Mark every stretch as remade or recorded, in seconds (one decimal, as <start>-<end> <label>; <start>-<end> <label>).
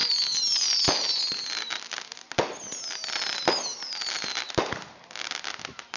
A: 0.0-6.0 recorded